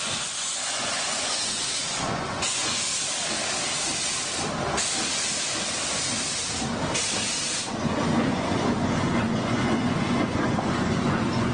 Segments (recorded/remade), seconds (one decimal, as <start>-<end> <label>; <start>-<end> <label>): 0.0-2.9 remade; 2.9-7.7 recorded; 7.7-11.5 remade